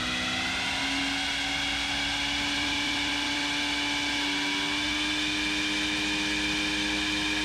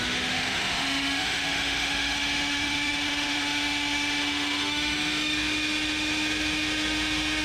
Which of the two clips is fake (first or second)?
second